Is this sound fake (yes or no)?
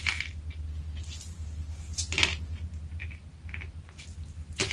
no